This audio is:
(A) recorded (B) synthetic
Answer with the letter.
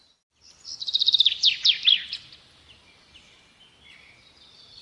A